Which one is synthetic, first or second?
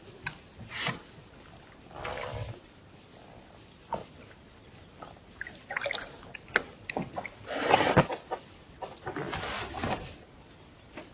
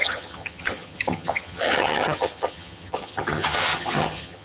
second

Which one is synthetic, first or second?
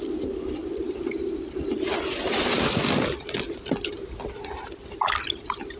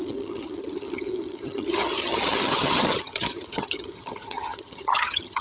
second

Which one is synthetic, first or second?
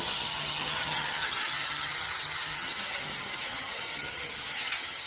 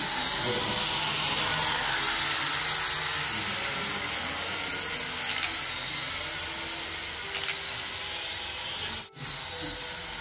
first